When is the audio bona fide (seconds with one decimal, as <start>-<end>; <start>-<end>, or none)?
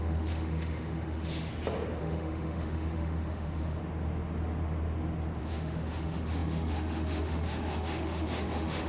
1.5-2.0; 3.8-5.4